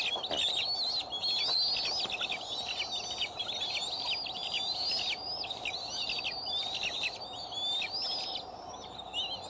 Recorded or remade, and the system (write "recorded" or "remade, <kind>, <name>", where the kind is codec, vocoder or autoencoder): recorded